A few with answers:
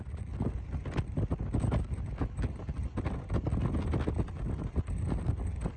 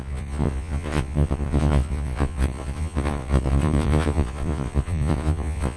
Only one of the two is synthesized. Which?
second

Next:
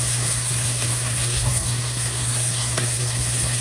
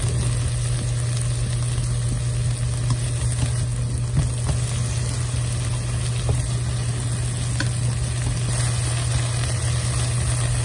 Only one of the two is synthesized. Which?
first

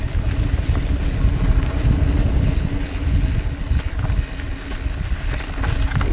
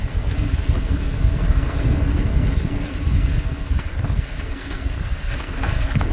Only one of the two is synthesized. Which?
second